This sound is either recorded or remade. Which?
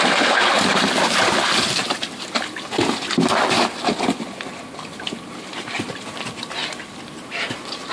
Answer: recorded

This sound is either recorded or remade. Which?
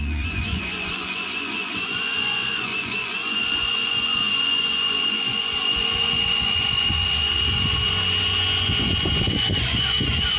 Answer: remade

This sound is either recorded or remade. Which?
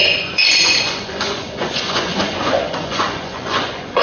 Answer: remade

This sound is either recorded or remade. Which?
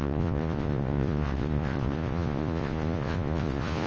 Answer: remade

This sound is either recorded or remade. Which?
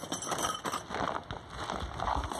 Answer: recorded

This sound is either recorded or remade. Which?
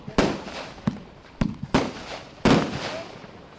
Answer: recorded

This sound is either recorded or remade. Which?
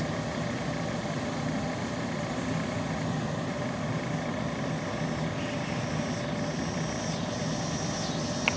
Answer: recorded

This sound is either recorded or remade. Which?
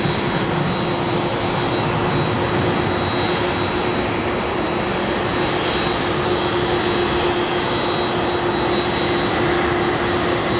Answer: recorded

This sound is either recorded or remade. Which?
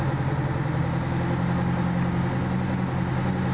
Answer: recorded